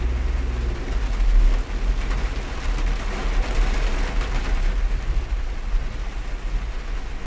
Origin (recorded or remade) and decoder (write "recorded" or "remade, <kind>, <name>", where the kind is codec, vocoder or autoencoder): recorded